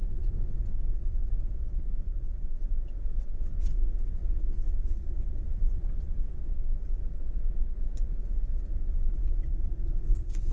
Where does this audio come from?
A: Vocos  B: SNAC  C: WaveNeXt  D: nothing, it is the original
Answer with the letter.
C